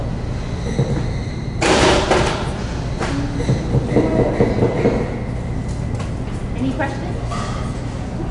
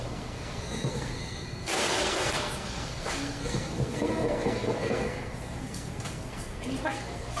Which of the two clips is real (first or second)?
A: first